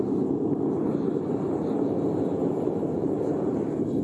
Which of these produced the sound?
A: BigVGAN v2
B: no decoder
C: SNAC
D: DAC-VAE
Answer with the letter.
B